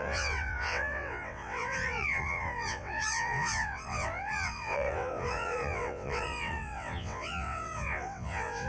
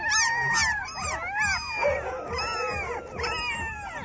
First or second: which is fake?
first